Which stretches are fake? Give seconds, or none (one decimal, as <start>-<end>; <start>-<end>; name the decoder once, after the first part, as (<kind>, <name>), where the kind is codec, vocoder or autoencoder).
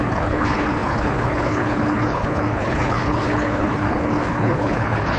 0.0-5.2 (codec, HILCodec)